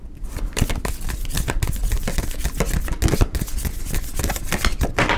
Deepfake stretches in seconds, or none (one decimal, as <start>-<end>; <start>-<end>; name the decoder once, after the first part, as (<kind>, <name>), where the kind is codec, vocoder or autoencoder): 1.8-2.4 (vocoder, BigVGAN v2)